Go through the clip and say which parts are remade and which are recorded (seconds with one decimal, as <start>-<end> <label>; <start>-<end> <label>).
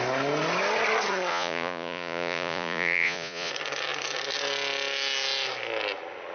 0.0-1.3 recorded; 1.3-3.5 remade; 3.5-6.3 recorded